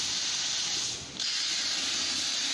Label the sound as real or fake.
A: real